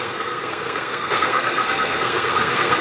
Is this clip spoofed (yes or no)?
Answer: yes